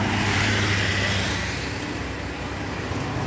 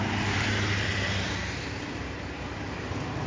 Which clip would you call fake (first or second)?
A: second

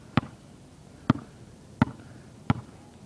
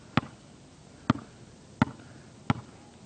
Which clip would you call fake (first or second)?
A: first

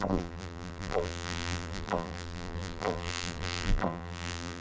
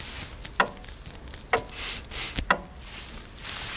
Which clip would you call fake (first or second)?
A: first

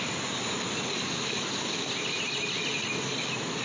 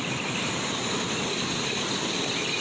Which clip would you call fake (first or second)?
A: second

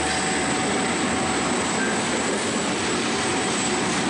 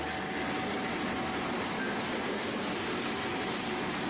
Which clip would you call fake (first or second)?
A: first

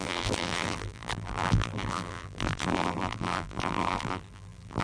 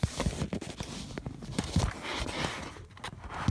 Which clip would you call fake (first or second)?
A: first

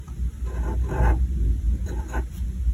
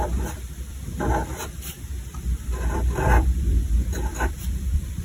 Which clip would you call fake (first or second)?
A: second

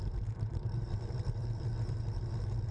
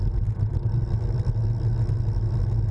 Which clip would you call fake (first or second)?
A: first